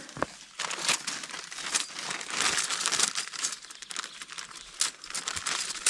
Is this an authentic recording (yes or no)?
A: yes